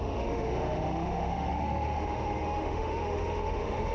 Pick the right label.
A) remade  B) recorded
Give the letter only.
A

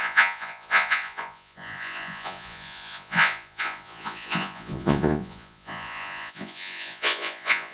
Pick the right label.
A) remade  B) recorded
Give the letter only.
A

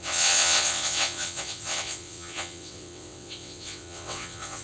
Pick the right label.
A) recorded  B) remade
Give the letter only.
B